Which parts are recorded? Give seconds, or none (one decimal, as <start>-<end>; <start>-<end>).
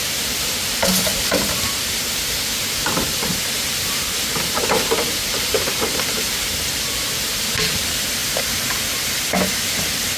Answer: 1.1-3.3; 8.2-9.5